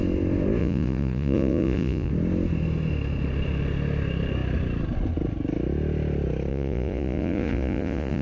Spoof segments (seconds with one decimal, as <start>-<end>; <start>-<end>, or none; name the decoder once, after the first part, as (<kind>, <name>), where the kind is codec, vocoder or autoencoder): 0.6-2.1 (vocoder, Vocos); 6.5-8.2